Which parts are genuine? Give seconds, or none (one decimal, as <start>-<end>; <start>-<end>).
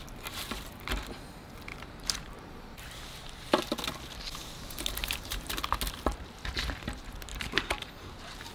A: 0.0-1.7; 3.0-5.0; 5.6-7.3